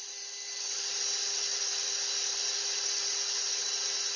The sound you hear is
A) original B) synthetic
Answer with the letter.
A